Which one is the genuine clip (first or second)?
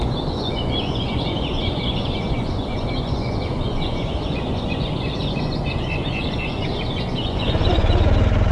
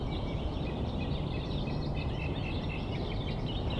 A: second